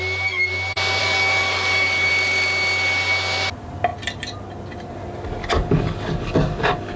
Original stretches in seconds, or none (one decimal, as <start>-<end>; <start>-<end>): 0.0-1.0; 2.1-5.4